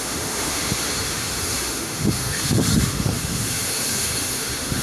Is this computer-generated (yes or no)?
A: yes